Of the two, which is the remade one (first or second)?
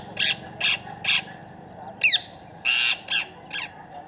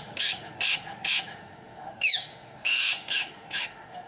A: second